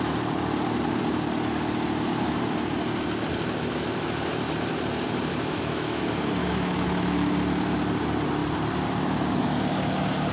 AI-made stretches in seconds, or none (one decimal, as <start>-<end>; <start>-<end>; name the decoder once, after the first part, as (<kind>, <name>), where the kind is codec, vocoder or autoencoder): 5.3-6.0 (autoencoder, DAC-VAE); 6.4-7.3